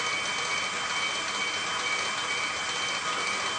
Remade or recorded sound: recorded